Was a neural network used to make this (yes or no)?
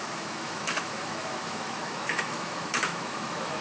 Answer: yes